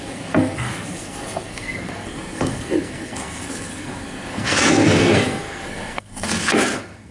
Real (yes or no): no